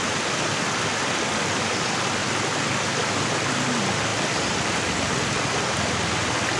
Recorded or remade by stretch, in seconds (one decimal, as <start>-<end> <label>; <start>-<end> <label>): 0.0-6.6 recorded

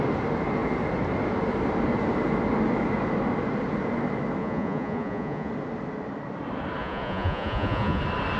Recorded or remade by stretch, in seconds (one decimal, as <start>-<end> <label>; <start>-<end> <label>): 0.0-4.4 recorded; 4.4-5.5 remade; 5.5-6.8 recorded; 6.8-8.0 remade; 8.0-8.4 recorded

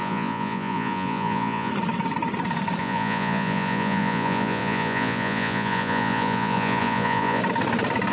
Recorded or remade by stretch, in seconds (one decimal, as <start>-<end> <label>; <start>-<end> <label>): 0.0-1.7 remade; 1.7-2.8 recorded; 2.8-7.4 remade; 7.4-8.1 recorded

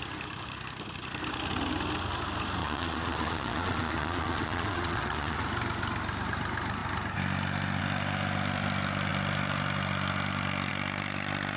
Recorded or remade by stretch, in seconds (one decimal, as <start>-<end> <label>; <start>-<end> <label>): 0.0-2.6 recorded; 2.6-5.4 remade; 5.4-11.6 recorded

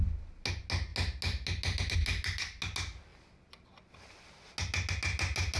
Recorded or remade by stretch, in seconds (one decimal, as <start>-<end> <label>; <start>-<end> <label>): 0.0-5.6 recorded

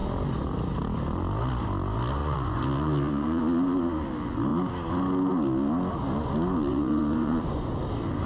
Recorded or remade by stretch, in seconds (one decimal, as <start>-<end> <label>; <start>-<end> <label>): 0.0-2.2 recorded; 2.2-3.4 remade; 3.4-6.7 recorded; 6.7-7.7 remade; 7.7-8.3 recorded